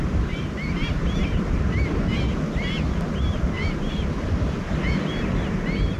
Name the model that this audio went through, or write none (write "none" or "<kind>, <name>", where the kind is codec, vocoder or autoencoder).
none